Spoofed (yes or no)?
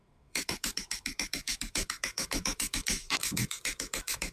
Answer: yes